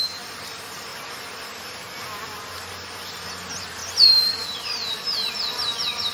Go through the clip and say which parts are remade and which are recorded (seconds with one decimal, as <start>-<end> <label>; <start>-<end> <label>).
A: 0.0-0.9 remade; 0.9-3.1 recorded; 3.1-6.1 remade